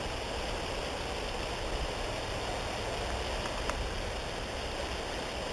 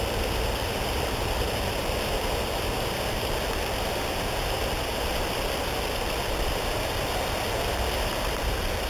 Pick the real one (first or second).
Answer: first